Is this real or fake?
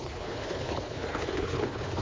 fake